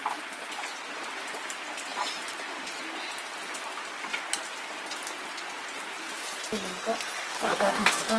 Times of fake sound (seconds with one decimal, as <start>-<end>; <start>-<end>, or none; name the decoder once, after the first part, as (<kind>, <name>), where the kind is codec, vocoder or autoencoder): 7.3-8.2 (codec, DAC)